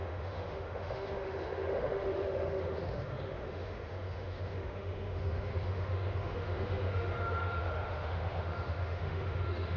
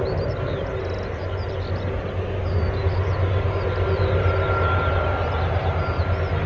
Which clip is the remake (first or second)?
first